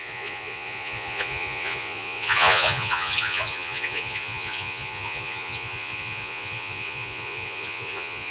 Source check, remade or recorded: remade